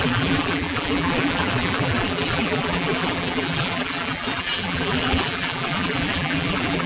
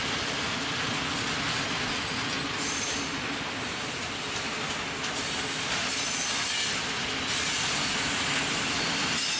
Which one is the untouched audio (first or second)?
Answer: second